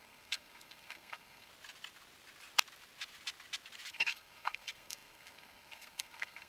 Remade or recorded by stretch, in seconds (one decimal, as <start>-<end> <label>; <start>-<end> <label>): 0.0-1.5 remade; 1.5-3.9 recorded; 3.9-6.5 remade